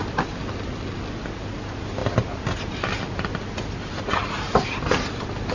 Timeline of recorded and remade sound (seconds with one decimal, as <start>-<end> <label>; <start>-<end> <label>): 0.0-5.5 recorded